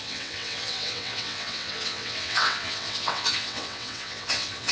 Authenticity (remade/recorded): remade